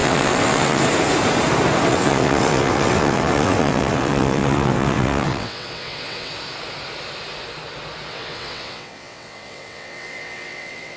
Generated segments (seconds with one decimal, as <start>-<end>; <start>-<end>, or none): 0.0-0.8; 1.9-6.3; 8.1-11.0